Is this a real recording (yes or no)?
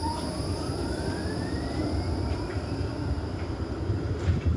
no